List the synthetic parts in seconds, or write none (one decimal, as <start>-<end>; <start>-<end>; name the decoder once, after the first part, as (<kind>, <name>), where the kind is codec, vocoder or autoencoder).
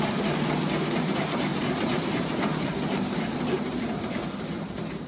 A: 1.5-4.0 (vocoder, BigVGAN v2)